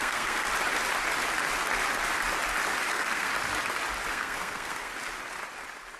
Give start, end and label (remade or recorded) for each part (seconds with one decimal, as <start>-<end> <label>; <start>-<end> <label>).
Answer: 0.0-0.5 remade; 0.5-2.9 recorded; 2.9-3.3 remade; 3.3-4.1 recorded; 4.1-4.9 remade; 4.9-6.0 recorded